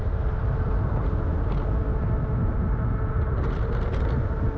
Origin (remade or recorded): recorded